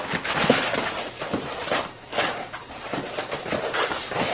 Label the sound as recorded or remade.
remade